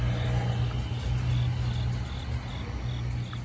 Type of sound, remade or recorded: recorded